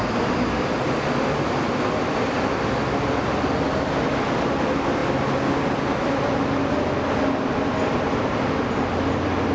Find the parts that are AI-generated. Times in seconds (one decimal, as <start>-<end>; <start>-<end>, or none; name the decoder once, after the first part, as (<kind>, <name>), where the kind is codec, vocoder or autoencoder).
none